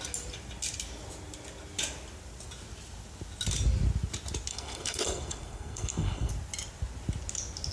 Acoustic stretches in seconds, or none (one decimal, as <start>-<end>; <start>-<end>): 0.0-4.5; 6.3-7.7